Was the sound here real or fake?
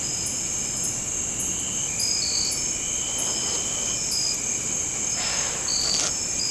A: real